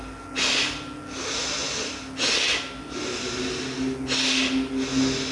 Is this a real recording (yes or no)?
yes